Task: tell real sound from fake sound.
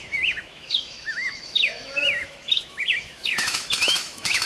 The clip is fake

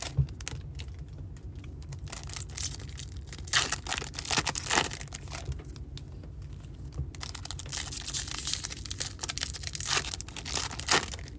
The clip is real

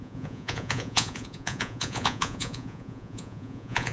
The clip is fake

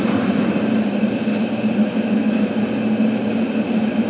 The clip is real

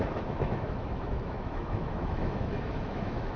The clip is fake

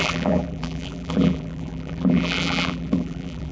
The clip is fake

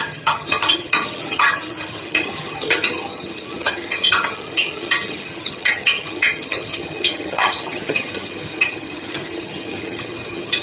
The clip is fake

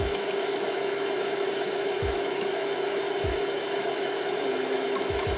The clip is fake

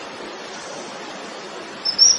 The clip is fake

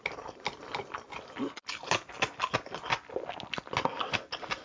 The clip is real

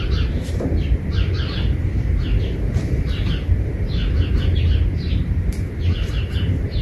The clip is fake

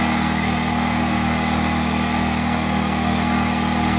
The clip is fake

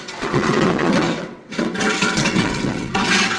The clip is fake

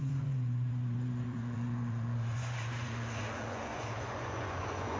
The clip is fake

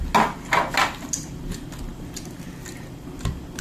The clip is real